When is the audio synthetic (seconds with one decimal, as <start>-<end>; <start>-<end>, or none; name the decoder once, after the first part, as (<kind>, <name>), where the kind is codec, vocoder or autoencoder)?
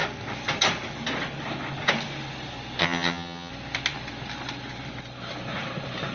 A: 2.8-3.5 (vocoder, HiFi-GAN)